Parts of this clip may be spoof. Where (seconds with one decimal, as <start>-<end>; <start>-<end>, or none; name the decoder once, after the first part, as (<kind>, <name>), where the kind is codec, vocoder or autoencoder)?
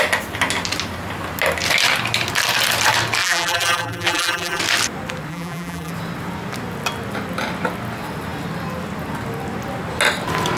3.2-4.6 (vocoder, BigVGAN v2); 5.3-5.9